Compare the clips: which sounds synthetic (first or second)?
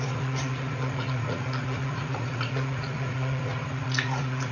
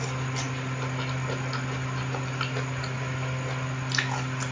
first